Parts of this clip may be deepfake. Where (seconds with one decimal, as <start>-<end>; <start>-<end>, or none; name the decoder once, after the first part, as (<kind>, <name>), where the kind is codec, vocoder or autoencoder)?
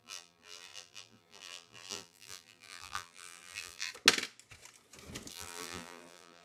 0.0-3.9 (vocoder, BigVGAN v2); 5.3-6.4